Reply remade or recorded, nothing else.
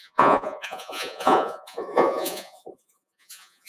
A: remade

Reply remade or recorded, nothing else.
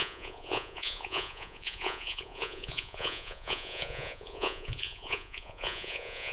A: remade